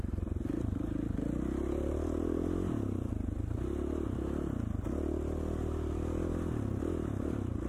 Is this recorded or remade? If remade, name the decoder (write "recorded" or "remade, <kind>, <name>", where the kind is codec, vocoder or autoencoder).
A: recorded